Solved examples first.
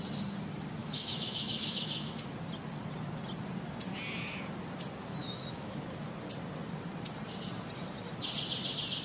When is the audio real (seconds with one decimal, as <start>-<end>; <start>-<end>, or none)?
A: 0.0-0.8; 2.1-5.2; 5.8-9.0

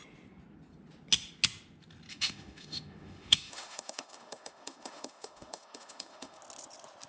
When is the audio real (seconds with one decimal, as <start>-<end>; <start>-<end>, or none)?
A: 0.0-2.1; 6.4-7.1

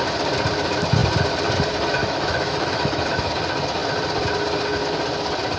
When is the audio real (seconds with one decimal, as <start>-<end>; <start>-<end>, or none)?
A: 0.0-2.0; 3.3-5.6

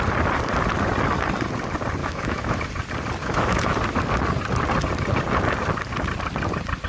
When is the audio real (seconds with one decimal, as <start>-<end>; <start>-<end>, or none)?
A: 0.0-2.0; 2.6-3.2; 3.8-6.9